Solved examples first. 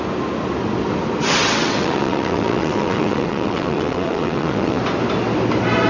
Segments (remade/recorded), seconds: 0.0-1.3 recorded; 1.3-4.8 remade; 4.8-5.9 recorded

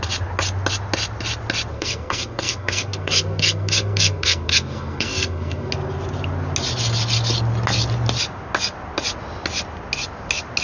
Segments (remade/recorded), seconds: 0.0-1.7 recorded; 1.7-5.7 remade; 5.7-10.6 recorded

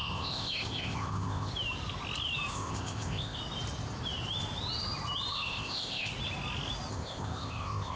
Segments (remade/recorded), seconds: 0.0-1.5 remade; 1.5-2.5 recorded; 2.5-3.4 remade; 3.4-5.3 recorded; 5.3-6.1 remade; 6.1-6.9 recorded; 6.9-8.0 remade

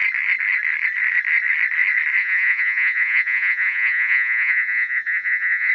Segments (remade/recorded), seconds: 0.0-2.2 recorded; 2.2-5.7 remade

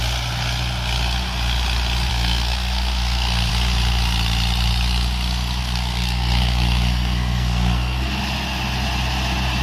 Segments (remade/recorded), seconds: 0.0-2.1 recorded; 2.1-3.5 remade; 3.5-5.6 recorded; 5.6-8.2 remade; 8.2-9.6 recorded